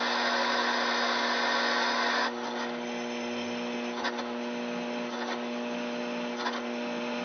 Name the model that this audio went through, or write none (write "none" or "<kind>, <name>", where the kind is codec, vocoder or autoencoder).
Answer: none